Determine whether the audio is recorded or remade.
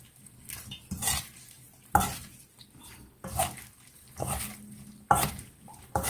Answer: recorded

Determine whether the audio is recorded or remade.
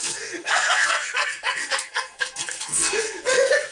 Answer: remade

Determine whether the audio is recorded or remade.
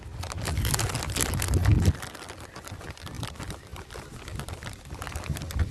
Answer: recorded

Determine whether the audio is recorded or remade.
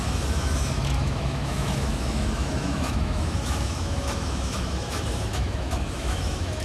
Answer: remade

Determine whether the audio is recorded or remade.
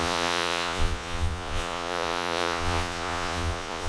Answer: remade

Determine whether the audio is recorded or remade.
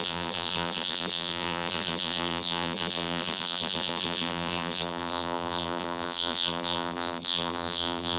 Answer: remade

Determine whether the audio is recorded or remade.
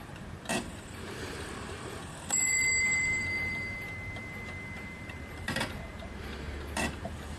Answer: remade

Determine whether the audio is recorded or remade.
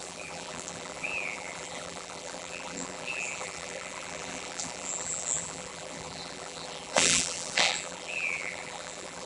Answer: remade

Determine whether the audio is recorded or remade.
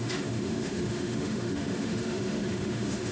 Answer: remade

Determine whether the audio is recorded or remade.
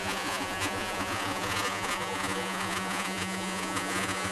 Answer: remade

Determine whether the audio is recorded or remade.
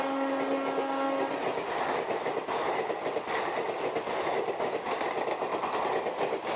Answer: recorded